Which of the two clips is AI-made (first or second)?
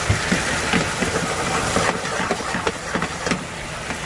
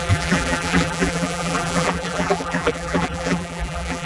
second